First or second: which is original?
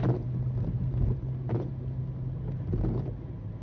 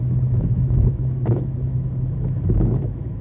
first